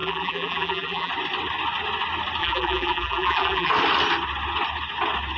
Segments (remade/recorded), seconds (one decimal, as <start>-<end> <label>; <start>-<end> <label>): 0.0-1.1 remade; 1.1-2.4 recorded; 2.4-3.7 remade; 3.7-5.4 recorded